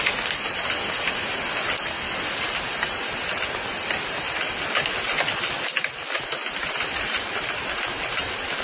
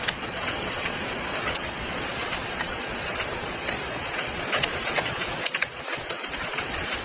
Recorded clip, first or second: first